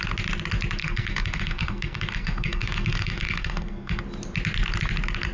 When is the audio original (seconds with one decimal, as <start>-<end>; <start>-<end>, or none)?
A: 0.0-0.8; 4.0-5.3